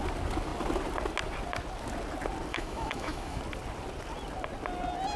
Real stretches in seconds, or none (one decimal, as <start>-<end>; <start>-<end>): 0.0-2.5; 3.4-5.2